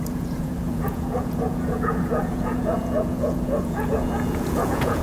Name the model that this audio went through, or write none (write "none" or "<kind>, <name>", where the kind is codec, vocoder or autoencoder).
vocoder, Vocos